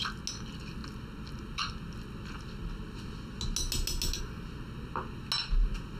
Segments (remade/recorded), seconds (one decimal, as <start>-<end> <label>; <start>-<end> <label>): 0.0-6.0 recorded